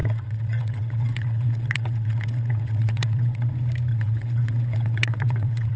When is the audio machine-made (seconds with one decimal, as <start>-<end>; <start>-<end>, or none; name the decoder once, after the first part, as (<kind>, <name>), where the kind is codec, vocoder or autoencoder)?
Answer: 0.0-3.5 (vocoder, WaveNeXt); 3.9-5.8